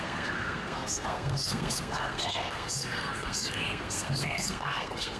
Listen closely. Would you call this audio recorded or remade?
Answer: remade